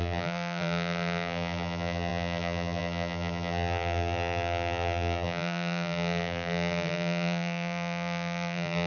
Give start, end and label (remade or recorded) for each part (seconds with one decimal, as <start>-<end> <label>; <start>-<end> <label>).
0.0-8.9 remade